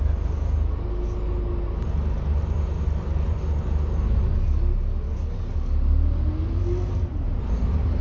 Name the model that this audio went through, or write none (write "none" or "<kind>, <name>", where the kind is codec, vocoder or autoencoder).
none